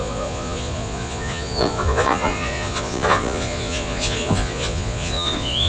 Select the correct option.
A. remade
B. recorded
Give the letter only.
A